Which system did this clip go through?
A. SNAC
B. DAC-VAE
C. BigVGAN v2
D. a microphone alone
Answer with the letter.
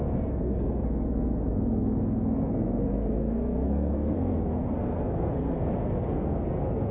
A